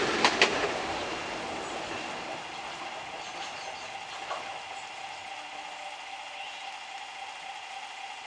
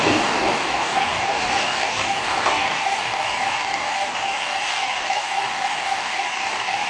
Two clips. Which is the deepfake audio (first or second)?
second